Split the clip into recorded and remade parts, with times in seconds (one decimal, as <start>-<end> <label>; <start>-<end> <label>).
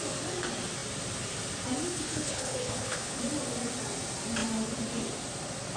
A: 0.0-1.9 recorded; 1.9-3.2 remade; 3.2-5.8 recorded